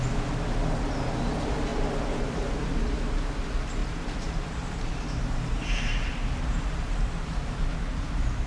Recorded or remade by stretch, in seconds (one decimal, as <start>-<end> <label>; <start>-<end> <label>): 0.0-1.7 recorded; 1.7-2.8 remade; 2.8-3.8 recorded; 3.8-8.5 remade